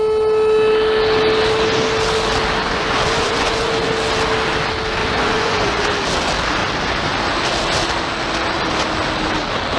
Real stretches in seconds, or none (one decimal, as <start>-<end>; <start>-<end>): 0.0-2.6; 3.9-5.0; 5.8-9.8

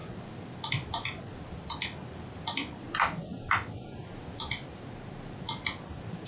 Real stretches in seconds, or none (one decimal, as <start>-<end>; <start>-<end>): 0.0-6.3